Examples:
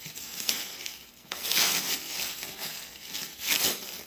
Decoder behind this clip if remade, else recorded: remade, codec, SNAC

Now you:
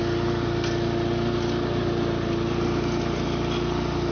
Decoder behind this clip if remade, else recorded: recorded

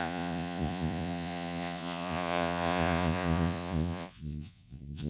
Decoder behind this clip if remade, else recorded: remade, vocoder, Vocos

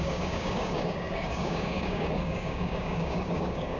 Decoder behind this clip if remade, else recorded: remade, codec, DAC